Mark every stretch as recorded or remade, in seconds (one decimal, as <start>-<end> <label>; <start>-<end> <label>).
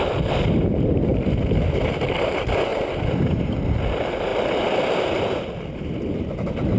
0.0-1.1 recorded; 1.1-2.1 remade; 2.1-4.3 recorded; 4.3-6.2 remade; 6.2-6.8 recorded